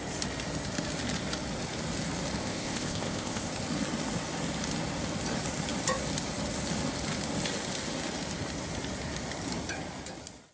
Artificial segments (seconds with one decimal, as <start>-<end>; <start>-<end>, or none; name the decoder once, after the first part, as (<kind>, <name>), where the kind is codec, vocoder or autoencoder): 2.4-3.5 (codec, ZipCodec)